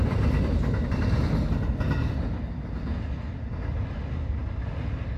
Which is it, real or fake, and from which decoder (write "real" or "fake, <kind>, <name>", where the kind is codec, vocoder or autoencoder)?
real